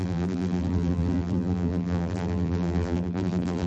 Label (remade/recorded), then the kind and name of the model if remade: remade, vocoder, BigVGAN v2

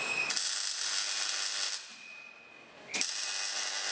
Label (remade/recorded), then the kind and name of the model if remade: recorded